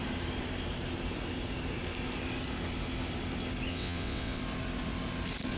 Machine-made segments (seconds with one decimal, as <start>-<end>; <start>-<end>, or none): 3.7-4.4